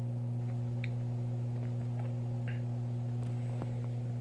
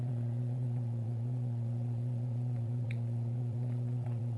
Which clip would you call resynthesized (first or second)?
second